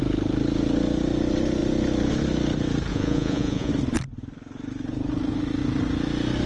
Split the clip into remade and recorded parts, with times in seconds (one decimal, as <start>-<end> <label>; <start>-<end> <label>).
0.0-2.9 recorded; 2.9-3.7 remade; 3.7-6.5 recorded